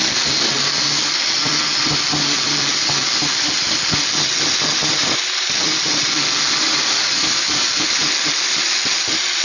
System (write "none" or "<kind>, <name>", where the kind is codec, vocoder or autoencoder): vocoder, BigVGAN v2